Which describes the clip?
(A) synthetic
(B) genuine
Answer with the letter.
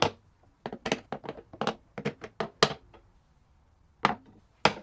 B